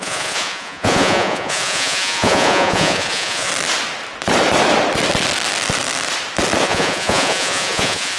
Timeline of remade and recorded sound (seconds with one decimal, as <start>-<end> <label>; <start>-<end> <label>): 0.0-3.5 remade; 3.5-6.6 recorded; 6.6-8.2 remade